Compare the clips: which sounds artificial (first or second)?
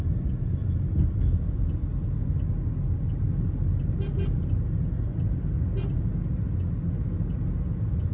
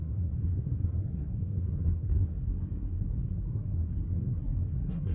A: second